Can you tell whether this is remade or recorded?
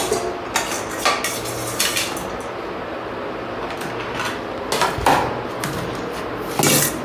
recorded